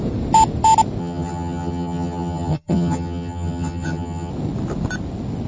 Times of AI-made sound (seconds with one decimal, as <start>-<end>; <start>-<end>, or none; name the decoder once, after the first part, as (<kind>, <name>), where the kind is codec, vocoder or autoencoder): 1.0-4.3 (vocoder, HiFi-GAN)